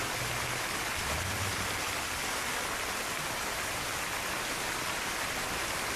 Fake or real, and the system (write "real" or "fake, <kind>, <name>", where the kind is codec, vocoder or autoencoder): real